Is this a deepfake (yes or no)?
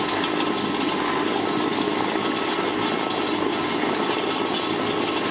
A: no